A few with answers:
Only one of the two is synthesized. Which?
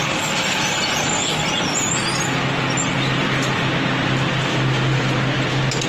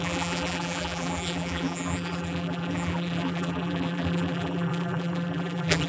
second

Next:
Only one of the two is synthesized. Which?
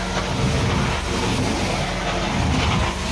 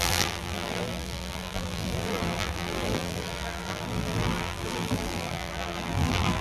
second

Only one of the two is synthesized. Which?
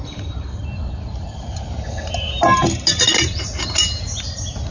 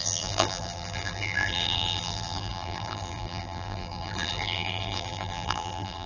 second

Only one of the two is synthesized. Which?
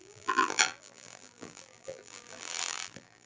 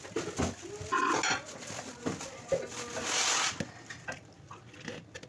first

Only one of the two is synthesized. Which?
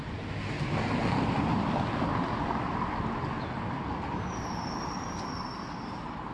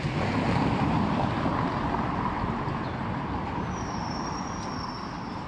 second